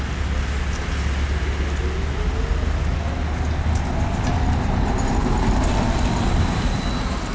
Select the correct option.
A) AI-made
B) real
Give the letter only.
B